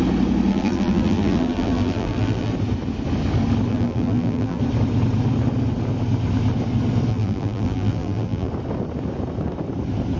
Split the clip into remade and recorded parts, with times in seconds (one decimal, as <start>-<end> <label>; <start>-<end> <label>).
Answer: 0.0-0.5 recorded; 0.5-2.5 remade; 2.5-3.7 recorded; 3.7-4.6 remade; 4.6-7.1 recorded; 7.1-8.5 remade; 8.5-10.2 recorded